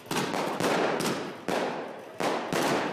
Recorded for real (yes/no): yes